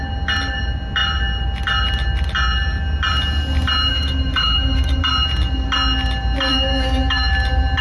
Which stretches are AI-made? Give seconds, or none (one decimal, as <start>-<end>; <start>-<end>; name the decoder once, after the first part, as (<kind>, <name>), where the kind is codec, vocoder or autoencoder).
3.9-5.0 (autoencoder, DAC-VAE); 6.5-7.3